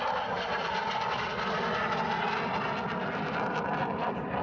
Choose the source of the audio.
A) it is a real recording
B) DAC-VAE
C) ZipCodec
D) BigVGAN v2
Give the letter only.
A